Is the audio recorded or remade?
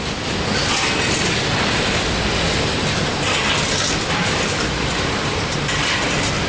recorded